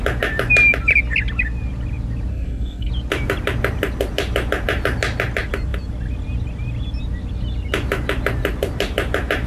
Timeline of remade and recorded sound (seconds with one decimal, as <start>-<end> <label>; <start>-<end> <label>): 0.0-2.3 recorded; 2.3-2.9 remade; 2.9-9.5 recorded